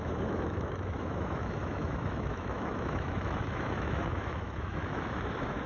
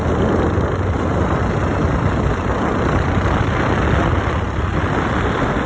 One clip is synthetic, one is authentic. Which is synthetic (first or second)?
first